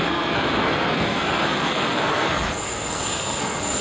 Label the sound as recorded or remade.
remade